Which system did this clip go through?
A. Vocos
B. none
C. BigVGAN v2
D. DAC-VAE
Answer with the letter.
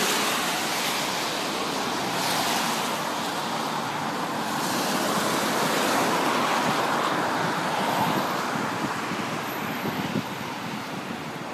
B